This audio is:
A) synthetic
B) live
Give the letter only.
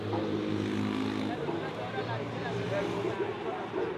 B